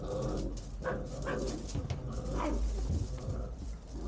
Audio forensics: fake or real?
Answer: real